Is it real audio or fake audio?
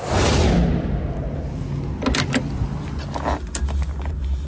real